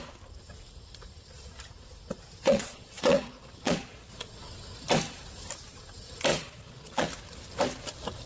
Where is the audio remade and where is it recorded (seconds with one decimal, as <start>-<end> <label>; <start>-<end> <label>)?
0.0-2.4 recorded; 2.4-4.4 remade; 4.4-6.3 recorded; 6.3-7.1 remade; 7.1-8.3 recorded